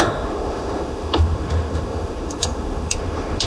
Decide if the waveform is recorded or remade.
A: remade